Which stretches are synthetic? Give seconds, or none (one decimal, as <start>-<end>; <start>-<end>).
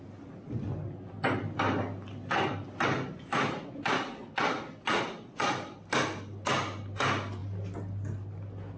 none